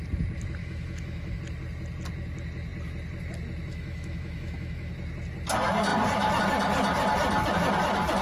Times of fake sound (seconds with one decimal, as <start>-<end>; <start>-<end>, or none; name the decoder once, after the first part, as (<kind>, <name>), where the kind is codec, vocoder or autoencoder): 0.6-1.4 (autoencoder, DAC-VAE); 3.7-4.9